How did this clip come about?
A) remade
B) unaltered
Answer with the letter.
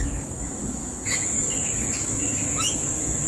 A